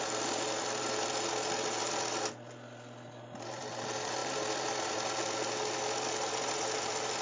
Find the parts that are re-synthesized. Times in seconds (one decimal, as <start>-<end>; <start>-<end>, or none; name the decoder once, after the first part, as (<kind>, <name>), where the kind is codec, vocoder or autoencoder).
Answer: none